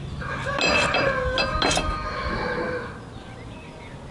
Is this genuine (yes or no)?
yes